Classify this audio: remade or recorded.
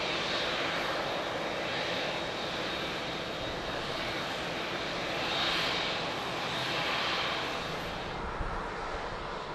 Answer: recorded